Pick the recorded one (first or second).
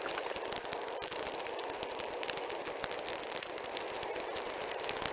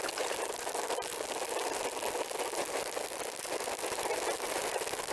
second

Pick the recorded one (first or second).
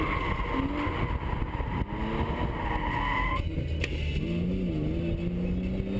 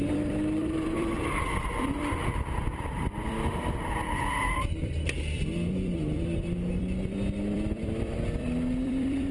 first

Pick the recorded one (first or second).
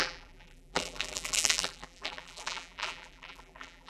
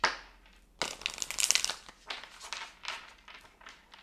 second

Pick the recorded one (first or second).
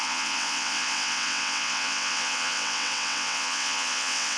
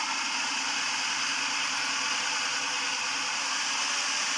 second